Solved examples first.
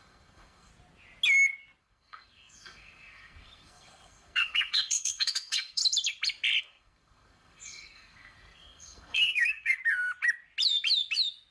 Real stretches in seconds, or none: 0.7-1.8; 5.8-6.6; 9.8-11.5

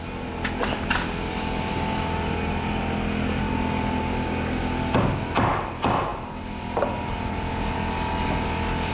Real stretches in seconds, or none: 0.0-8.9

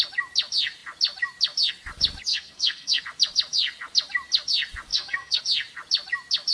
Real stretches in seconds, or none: 0.0-2.3; 3.0-4.9; 5.4-6.5

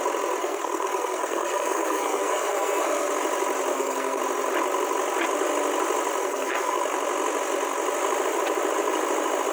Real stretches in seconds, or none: 0.0-0.4; 3.1-3.7; 4.2-6.2; 6.8-9.5